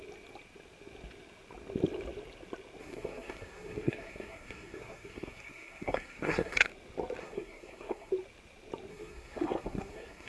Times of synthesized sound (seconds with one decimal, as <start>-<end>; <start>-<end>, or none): 2.8-6.7; 7.2-8.1; 8.9-10.3